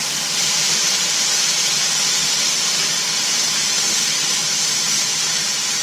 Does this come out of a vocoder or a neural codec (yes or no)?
no